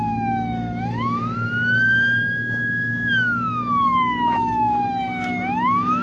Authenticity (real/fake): fake